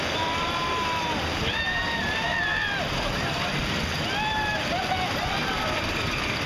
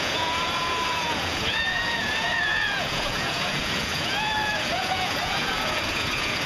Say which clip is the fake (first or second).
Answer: second